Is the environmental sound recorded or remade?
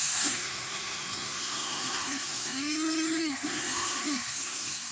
remade